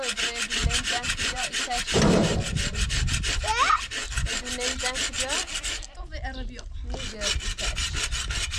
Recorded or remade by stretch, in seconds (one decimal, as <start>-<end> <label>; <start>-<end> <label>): 0.0-0.6 recorded; 0.6-2.9 remade; 2.9-8.6 recorded